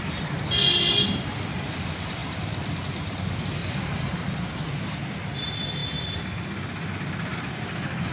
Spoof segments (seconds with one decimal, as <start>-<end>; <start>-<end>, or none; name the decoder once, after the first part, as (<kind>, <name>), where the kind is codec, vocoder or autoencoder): 3.6-4.6 (vocoder, BigVGAN v2)